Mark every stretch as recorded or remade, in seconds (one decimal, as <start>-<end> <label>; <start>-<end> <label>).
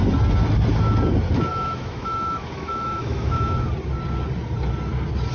0.0-1.5 recorded; 1.5-3.7 remade; 3.7-5.3 recorded